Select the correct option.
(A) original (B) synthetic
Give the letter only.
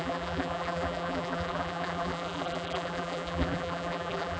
B